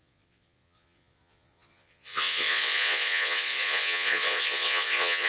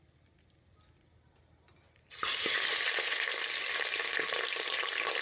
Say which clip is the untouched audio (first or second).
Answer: second